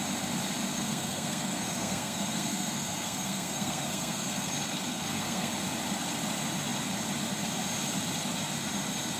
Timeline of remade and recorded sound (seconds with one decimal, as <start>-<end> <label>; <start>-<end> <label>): 0.0-0.7 recorded; 0.7-4.5 remade; 4.5-4.9 recorded; 4.9-5.5 remade; 5.5-9.2 recorded